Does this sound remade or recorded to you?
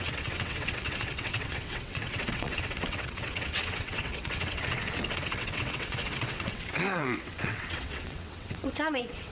remade